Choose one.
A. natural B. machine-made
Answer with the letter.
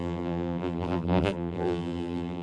B